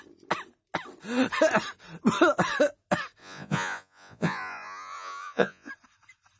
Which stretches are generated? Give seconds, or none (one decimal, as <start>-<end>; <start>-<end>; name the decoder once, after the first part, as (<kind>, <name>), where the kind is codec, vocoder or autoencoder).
3.2-5.7 (vocoder, Vocos)